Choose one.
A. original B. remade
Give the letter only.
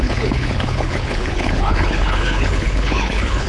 B